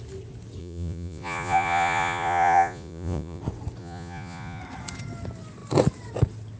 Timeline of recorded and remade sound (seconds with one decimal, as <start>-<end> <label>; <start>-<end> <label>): 0.0-0.6 recorded; 0.6-3.4 remade; 3.4-3.8 recorded; 3.8-4.6 remade; 4.6-6.6 recorded